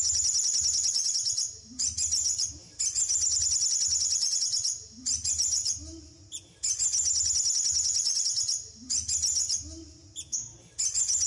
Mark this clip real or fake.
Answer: real